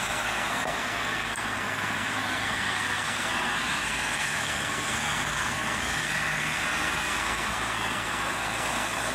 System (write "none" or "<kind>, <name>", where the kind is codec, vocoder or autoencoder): codec, SNAC